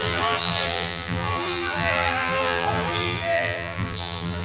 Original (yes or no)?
no